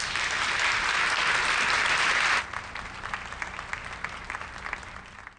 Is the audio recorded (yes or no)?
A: yes